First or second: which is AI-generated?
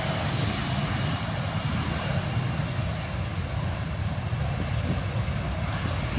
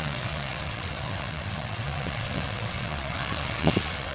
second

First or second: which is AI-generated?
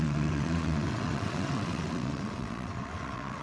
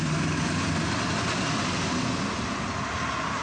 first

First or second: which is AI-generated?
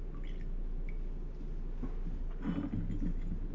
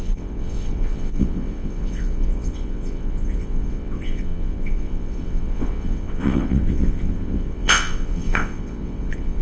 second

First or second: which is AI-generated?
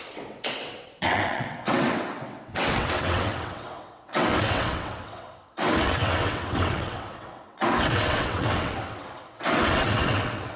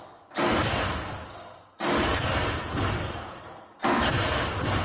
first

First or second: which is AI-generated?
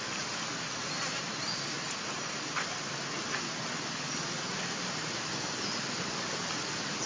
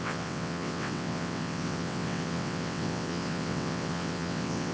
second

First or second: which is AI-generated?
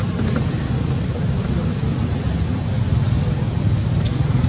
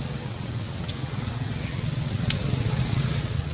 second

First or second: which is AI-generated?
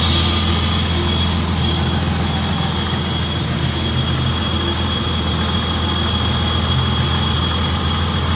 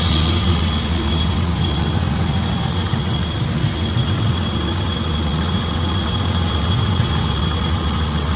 second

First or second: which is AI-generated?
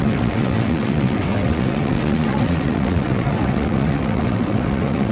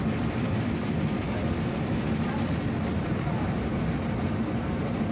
first